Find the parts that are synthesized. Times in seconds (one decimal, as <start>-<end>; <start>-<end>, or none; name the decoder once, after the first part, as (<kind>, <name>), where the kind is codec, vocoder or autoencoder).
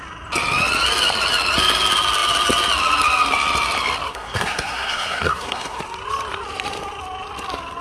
4.1-5.8 (codec, SNAC)